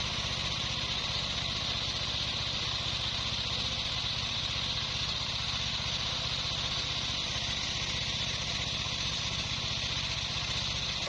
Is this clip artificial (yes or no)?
no